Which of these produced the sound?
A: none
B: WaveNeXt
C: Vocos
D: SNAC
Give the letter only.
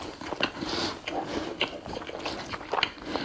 A